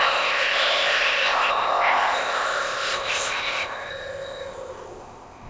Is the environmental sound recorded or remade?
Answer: remade